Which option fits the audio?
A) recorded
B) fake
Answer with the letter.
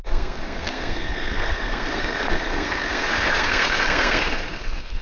B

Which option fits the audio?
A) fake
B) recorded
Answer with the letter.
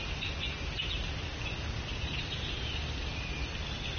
B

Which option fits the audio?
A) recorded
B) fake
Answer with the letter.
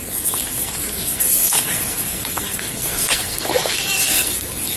B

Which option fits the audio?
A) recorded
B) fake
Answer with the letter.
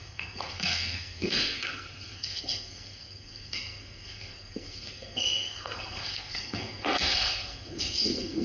B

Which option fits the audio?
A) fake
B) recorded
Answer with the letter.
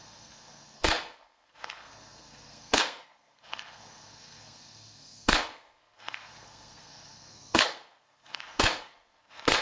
A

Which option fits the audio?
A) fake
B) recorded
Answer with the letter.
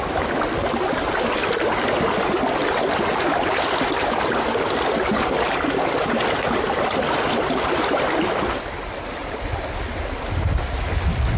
B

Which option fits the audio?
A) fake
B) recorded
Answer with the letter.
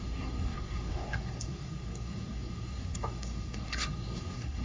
A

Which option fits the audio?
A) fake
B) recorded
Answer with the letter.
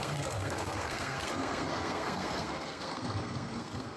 A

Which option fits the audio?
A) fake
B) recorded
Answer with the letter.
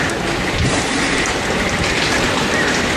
B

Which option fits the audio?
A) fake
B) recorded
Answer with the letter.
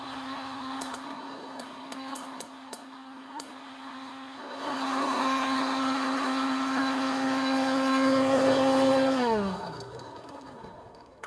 A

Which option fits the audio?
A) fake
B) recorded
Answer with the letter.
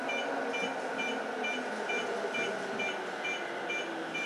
B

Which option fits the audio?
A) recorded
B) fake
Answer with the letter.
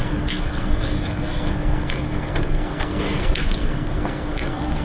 B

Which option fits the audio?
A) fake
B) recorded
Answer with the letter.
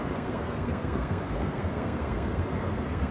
A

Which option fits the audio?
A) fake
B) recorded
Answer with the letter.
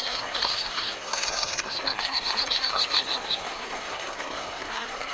A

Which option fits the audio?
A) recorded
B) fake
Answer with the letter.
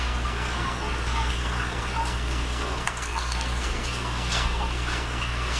B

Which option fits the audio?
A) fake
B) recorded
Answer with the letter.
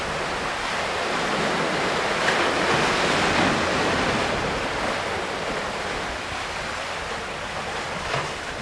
B